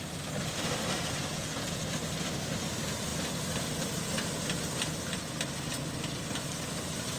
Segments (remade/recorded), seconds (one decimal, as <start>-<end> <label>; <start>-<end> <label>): 0.0-1.3 recorded; 1.3-1.8 remade; 1.8-7.2 recorded